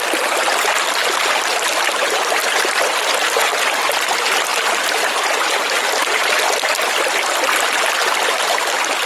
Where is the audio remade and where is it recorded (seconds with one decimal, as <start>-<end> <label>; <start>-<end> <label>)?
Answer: 0.0-9.1 recorded